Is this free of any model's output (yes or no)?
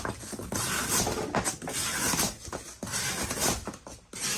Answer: yes